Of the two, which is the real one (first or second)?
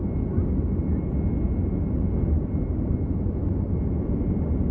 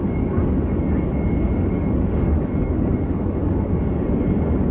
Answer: first